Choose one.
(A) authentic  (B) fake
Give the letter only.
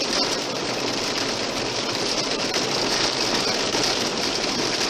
A